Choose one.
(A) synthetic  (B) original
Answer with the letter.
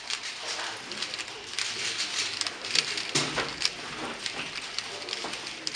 B